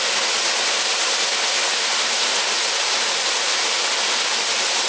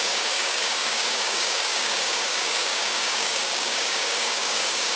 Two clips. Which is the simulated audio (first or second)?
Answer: second